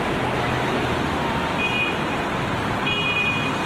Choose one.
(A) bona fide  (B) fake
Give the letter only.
A